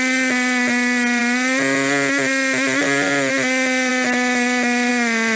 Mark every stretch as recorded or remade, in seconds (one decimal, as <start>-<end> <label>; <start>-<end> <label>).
0.0-5.4 recorded